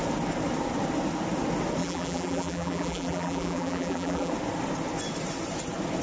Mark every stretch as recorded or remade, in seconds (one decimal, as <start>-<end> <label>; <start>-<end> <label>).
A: 0.0-1.8 recorded; 1.8-4.3 remade; 4.3-6.0 recorded